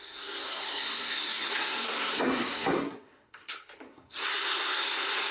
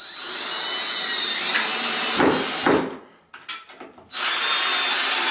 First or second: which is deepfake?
first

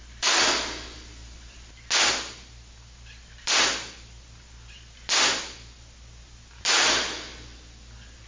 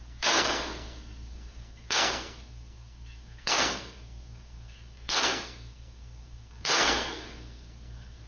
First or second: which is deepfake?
second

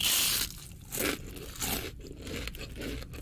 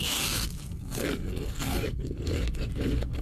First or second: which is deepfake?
second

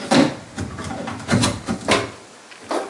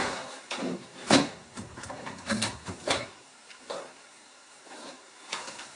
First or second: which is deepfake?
second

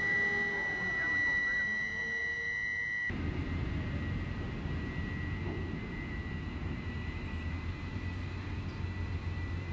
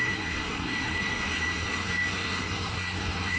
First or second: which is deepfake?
second